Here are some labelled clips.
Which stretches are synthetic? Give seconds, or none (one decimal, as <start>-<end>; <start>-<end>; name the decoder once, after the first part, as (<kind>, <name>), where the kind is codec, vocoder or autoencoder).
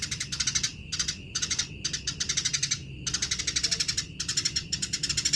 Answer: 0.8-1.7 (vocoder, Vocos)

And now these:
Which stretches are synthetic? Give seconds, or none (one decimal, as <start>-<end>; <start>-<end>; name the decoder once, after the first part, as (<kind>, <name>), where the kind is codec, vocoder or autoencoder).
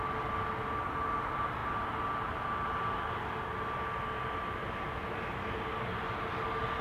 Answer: none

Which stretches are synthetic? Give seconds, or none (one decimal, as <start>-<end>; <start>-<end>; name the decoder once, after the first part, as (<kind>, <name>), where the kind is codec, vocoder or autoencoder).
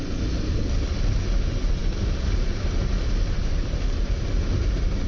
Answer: none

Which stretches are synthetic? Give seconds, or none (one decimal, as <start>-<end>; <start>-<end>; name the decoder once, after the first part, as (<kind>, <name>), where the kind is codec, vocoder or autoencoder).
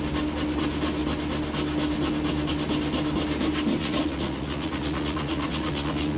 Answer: 3.8-6.2 (vocoder, Vocos)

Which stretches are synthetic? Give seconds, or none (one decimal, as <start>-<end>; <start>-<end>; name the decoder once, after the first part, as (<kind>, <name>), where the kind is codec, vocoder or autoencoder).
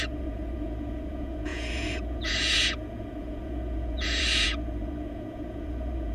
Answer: 0.0-6.1 (vocoder, Vocos)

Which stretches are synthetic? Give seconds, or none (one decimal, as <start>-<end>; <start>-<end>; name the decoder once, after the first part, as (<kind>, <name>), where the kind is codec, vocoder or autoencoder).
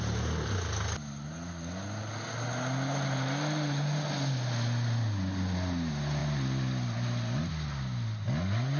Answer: none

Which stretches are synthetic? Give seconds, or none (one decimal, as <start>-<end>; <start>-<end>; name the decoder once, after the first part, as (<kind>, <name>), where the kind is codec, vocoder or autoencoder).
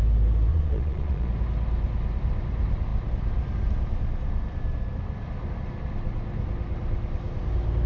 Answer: 0.5-1.3 (vocoder, Vocos)